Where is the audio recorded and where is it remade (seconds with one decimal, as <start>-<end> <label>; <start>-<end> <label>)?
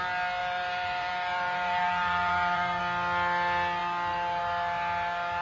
0.0-0.4 recorded; 0.4-2.8 remade; 2.8-5.4 recorded